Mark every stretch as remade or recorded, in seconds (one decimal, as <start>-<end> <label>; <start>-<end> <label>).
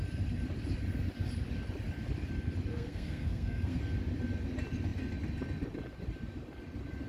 0.0-2.7 recorded; 2.7-3.8 remade; 3.8-7.1 recorded